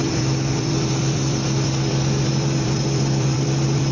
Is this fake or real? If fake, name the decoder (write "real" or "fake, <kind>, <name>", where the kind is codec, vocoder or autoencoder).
fake, vocoder, BigVGAN v2